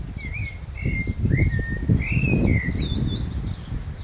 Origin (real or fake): real